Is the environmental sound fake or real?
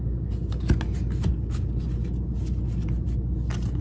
real